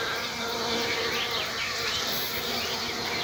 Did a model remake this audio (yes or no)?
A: no